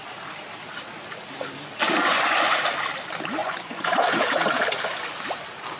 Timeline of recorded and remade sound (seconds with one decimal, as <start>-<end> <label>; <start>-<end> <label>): 0.0-2.1 recorded; 2.1-2.6 remade; 2.6-3.4 recorded; 3.4-4.2 remade; 4.2-5.8 recorded